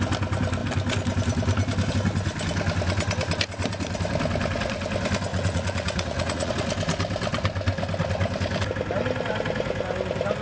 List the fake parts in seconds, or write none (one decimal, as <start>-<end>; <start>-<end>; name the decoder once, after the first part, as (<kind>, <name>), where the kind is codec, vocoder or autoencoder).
5.3-6.5 (vocoder, Vocos)

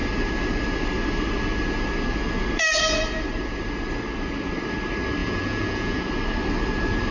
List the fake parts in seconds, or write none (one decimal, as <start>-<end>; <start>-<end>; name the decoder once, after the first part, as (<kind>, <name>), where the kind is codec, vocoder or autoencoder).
5.2-6.0 (vocoder, Vocos)

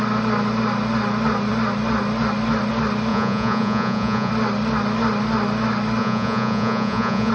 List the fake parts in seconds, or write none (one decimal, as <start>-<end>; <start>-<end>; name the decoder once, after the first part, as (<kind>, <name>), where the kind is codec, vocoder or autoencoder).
3.1-4.3 (vocoder, Vocos); 6.0-7.3

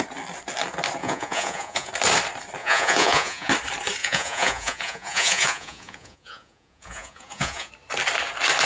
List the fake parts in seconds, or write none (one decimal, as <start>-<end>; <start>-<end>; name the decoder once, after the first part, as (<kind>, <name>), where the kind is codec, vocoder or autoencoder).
1.0-1.9 (vocoder, Vocos); 2.6-3.5; 4.0-7.7